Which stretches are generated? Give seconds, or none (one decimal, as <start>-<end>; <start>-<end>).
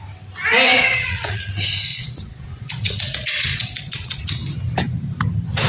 0.7-1.5; 1.9-4.2